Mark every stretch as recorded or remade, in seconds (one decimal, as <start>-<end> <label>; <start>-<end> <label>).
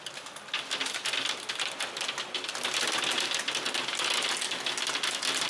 0.0-5.5 recorded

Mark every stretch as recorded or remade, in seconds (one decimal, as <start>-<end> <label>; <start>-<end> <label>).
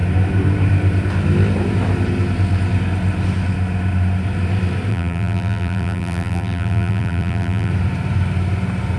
0.0-4.9 recorded; 4.9-7.7 remade; 7.7-9.0 recorded